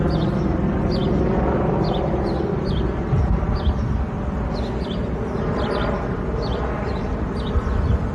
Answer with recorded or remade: recorded